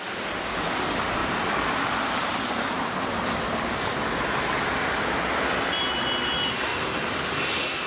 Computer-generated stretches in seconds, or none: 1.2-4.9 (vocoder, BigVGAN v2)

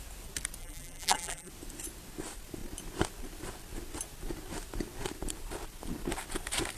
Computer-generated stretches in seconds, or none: 0.6-1.5 (vocoder, BigVGAN v2)

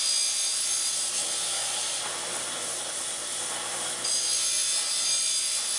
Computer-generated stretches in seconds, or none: 0.5-1.1 (vocoder, BigVGAN v2); 1.8-3.5

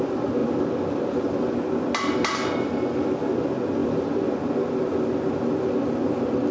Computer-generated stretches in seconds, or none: 0.4-1.3 (vocoder, BigVGAN v2); 3.8-4.4

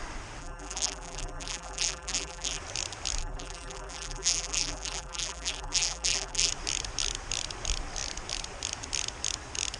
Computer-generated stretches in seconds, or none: 0.4-2.6 (vocoder, BigVGAN v2); 3.2-6.5

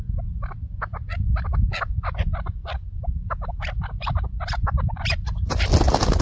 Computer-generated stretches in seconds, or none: 2.6-5.7 (vocoder, BigVGAN v2)

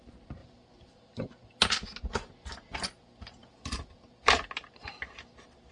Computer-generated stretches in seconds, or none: 0.4-1.3 (vocoder, BigVGAN v2); 3.4-4.7

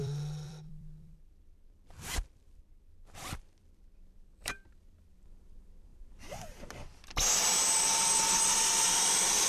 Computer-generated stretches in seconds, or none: 0.0-9.5 (vocoder, BigVGAN v2)